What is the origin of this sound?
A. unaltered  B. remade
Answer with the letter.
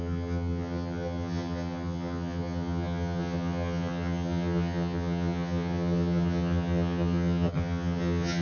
B